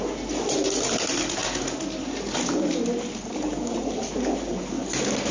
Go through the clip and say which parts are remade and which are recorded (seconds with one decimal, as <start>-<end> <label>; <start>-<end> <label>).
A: 0.0-5.3 recorded